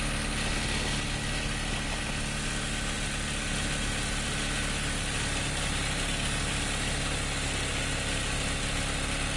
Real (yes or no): yes